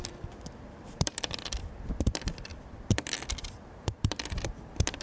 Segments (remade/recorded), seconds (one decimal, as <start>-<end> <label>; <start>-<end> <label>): 0.0-5.0 remade

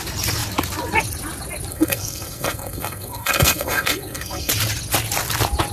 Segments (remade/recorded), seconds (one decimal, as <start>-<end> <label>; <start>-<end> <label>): 0.0-1.7 recorded; 1.7-4.5 remade; 4.5-5.7 recorded

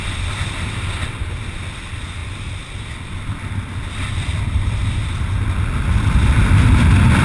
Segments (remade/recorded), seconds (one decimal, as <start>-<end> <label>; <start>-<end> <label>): 0.0-7.2 recorded

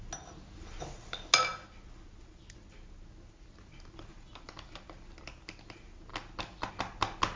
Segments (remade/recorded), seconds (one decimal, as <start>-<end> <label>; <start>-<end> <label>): 0.0-7.4 recorded

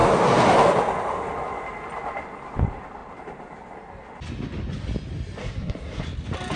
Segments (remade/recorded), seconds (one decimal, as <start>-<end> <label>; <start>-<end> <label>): 0.0-5.4 recorded; 5.4-6.0 remade; 6.0-6.6 recorded

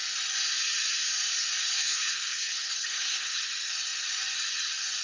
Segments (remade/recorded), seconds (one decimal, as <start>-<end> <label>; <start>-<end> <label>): 0.0-1.6 recorded; 1.6-3.4 remade; 3.4-5.0 recorded